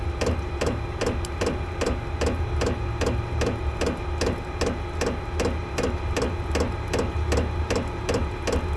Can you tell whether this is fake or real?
real